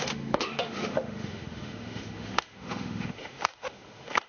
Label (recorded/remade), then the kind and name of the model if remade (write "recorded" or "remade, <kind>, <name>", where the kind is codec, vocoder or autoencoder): remade, autoencoder, DAC-VAE